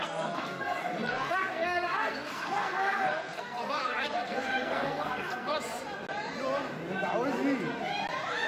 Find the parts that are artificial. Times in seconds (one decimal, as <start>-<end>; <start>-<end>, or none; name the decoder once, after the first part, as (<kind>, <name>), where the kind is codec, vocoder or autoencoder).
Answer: 0.0-5.5 (codec, SNAC)

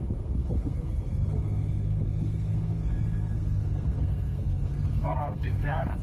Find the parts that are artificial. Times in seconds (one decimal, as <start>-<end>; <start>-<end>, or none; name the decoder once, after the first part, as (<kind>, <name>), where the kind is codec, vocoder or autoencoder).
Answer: 0.0-6.0 (codec, SNAC)